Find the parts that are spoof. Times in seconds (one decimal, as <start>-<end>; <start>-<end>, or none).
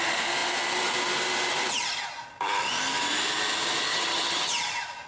3.9-4.5